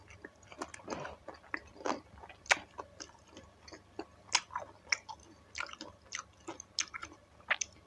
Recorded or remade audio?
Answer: recorded